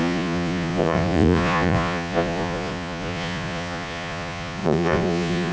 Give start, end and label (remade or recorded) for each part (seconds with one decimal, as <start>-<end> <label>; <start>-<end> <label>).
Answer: 0.0-5.5 remade